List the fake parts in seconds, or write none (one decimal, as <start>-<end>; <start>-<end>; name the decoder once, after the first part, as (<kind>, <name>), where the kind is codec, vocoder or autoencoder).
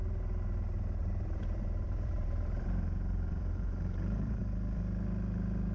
1.0-4.4 (vocoder, BigVGAN v2)